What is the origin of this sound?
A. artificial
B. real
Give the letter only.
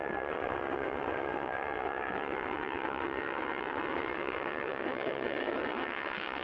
A